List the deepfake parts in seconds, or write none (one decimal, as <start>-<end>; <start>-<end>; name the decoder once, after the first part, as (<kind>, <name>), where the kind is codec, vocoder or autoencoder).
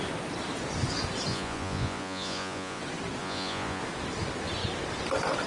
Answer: 1.3-2.8 (vocoder, Vocos); 3.2-3.8